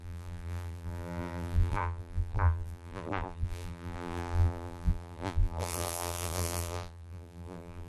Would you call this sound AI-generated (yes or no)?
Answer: yes